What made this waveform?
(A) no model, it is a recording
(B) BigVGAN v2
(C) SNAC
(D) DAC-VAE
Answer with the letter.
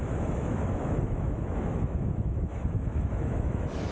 D